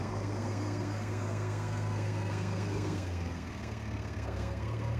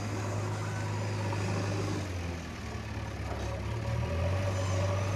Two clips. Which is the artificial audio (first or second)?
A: first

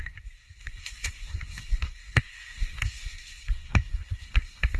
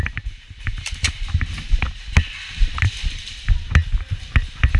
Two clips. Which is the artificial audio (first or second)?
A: first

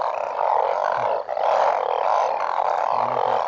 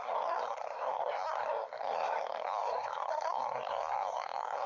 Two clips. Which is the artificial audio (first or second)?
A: second